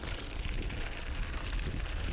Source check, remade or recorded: recorded